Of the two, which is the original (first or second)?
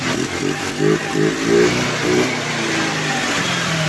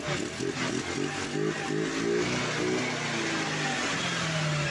second